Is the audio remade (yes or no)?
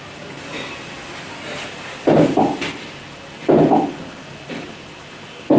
no